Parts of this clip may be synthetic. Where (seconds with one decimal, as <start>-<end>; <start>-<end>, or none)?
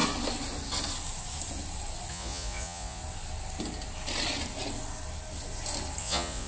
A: 2.1-3.0; 6.0-6.5